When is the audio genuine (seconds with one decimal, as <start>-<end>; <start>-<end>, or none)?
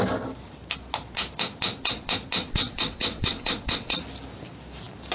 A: 0.0-2.4; 4.0-5.1